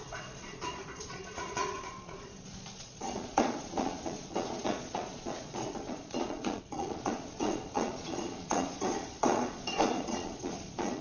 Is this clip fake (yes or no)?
yes